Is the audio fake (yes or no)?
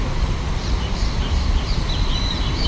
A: yes